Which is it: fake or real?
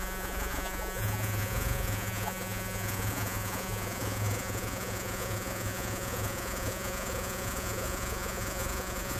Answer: fake